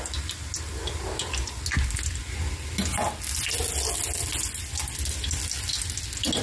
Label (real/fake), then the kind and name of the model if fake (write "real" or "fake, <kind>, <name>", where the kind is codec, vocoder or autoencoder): real